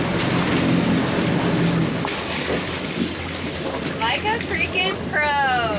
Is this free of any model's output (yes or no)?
yes